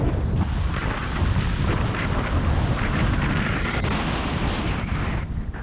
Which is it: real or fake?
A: real